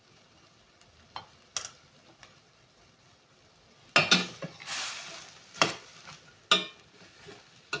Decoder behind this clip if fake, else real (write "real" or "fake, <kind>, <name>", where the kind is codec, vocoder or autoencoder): real